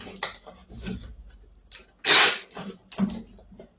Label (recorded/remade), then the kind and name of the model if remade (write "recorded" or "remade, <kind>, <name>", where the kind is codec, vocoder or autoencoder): recorded